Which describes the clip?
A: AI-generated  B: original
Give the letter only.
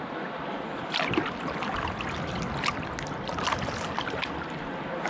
B